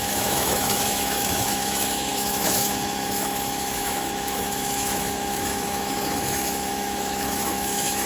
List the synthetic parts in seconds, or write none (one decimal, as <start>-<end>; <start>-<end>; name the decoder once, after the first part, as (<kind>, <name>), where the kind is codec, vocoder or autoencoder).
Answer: 0.0-8.1 (autoencoder, DAC-VAE)